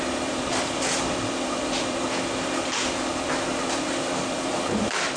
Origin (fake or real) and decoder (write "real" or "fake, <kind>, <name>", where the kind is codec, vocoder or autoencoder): fake, vocoder, BigVGAN v2